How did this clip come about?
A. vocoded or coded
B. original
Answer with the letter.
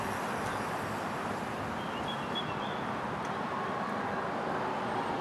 B